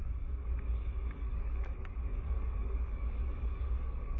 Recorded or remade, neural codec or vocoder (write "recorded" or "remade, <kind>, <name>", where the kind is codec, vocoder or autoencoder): remade, codec, DAC